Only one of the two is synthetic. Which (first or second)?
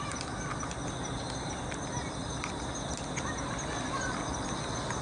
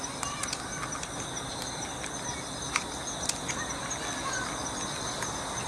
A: first